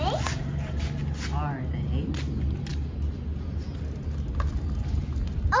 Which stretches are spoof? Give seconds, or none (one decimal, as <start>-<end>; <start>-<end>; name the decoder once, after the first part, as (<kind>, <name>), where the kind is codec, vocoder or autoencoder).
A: none